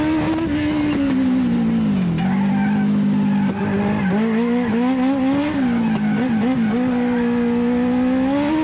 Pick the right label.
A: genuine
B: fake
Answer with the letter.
A